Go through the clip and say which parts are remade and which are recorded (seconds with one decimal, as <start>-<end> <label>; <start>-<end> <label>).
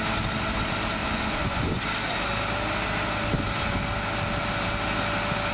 0.0-1.0 recorded; 1.0-1.8 remade; 1.8-5.5 recorded